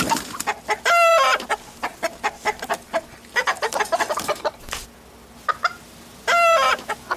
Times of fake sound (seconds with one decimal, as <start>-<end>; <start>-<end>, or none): none